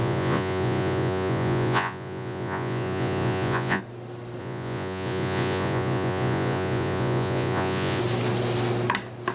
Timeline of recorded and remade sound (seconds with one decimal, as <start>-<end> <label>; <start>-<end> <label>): 0.0-3.8 remade; 3.8-4.4 recorded; 4.4-8.0 remade; 8.0-9.3 recorded